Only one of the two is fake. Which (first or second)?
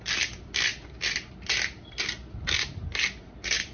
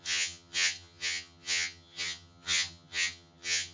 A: second